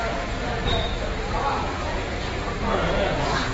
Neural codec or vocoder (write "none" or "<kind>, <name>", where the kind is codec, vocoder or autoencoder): vocoder, Vocos